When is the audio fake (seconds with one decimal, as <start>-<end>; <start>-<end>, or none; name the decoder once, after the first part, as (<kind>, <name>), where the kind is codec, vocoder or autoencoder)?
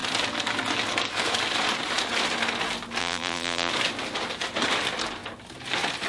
3.0-3.7 (vocoder, BigVGAN v2)